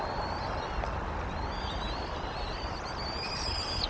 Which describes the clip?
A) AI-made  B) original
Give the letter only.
B